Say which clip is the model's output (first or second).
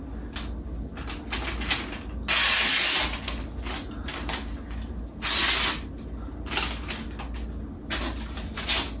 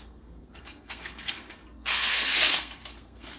second